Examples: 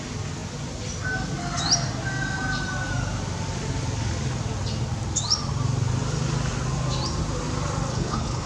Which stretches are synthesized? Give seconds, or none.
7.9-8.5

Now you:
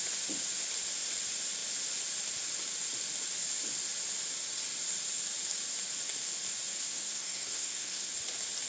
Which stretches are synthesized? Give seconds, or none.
6.9-8.1